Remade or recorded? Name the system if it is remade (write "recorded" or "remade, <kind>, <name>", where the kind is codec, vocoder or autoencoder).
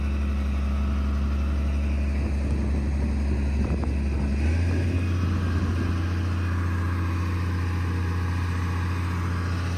recorded